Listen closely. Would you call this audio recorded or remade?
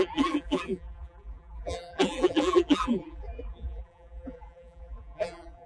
remade